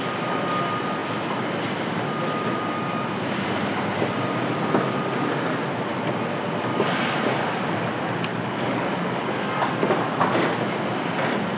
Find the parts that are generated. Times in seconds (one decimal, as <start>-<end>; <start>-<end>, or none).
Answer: 8.3-9.7